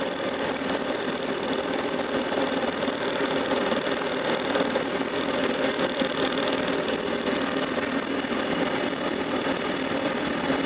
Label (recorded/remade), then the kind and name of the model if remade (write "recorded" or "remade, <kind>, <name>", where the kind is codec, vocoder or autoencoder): remade, vocoder, BigVGAN v2